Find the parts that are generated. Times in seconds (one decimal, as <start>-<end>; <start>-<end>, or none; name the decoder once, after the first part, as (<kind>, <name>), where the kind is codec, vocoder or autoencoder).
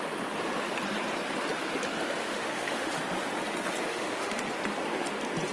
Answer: 2.2-2.9 (autoencoder, DAC-VAE); 3.9-4.4